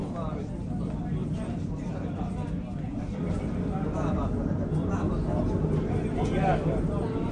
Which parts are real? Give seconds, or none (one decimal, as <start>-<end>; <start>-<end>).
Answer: 0.0-7.3